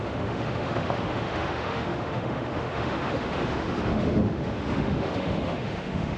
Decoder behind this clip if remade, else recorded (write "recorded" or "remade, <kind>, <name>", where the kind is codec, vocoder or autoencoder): remade, autoencoder, DAC-VAE